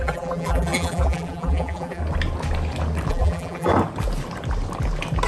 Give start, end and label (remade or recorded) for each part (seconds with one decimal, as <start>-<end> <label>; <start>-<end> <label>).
0.0-2.0 remade; 2.0-3.1 recorded; 3.1-3.7 remade; 3.7-5.3 recorded